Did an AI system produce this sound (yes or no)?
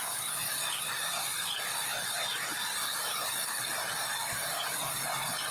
yes